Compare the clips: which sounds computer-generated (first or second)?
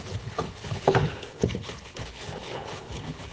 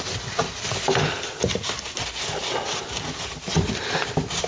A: first